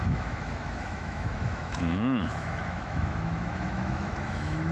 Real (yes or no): no